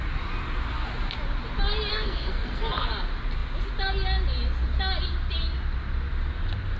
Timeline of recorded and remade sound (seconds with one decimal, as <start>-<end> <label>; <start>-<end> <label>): 0.0-1.9 recorded; 1.9-2.9 remade; 2.9-6.8 recorded